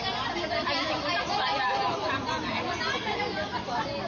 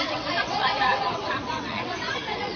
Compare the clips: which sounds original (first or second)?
first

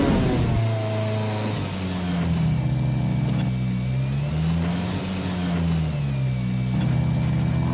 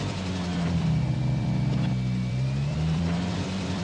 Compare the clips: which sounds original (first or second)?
first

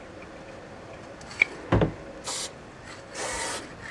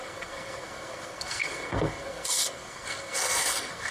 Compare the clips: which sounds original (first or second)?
first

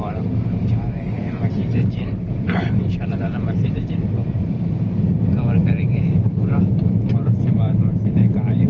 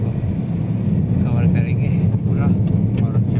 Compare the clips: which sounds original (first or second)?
second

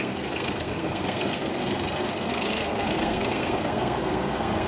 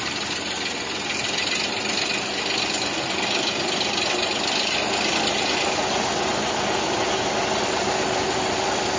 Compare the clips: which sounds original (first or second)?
second